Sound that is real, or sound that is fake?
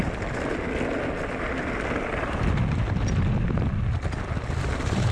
real